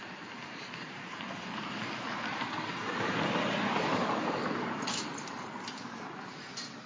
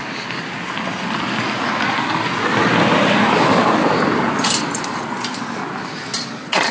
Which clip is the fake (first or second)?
first